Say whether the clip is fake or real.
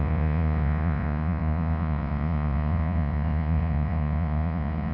fake